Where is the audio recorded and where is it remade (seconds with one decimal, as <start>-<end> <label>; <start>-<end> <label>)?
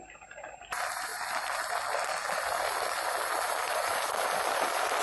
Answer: 0.0-5.0 recorded